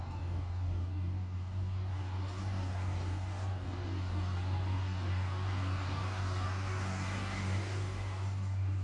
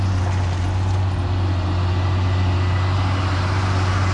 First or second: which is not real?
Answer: first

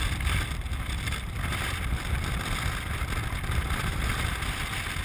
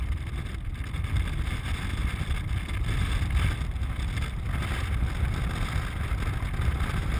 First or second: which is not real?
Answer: first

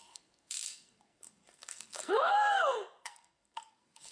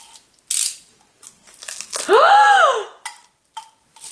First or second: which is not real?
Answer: first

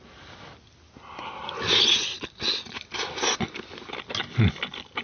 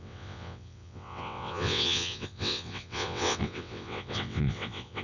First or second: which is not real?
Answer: second